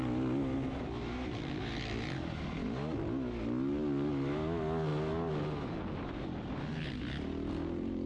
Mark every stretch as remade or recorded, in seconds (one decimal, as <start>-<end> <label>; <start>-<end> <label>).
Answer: 0.0-8.1 recorded